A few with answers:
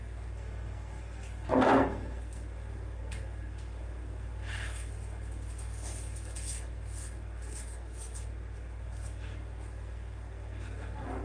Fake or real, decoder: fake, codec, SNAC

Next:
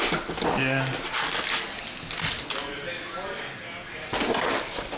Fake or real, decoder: real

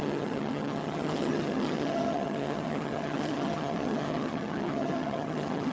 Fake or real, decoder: fake, vocoder, HiFi-GAN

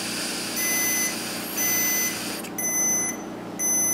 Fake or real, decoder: real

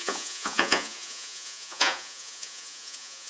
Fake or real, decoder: fake, vocoder, Vocos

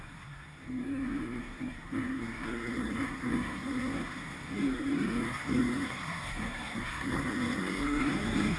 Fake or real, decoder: fake, codec, SNAC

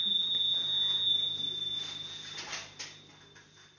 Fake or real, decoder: real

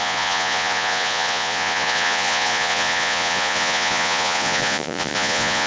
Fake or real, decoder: fake, vocoder, Vocos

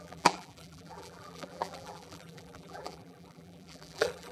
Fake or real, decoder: fake, vocoder, BigVGAN v2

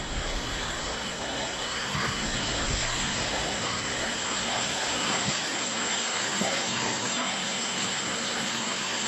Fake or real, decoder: fake, codec, SNAC